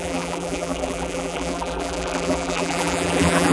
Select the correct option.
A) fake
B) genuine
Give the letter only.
A